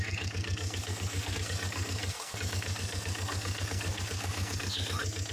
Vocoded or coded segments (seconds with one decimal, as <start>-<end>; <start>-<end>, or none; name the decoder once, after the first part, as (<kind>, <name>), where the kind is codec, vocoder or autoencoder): 0.0-5.3 (codec, SNAC)